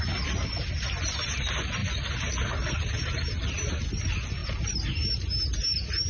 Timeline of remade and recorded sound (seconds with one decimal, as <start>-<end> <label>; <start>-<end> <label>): 0.0-6.1 recorded

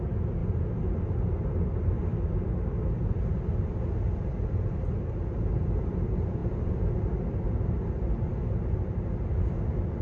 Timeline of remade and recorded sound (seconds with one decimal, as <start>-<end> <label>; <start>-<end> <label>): 0.0-10.0 recorded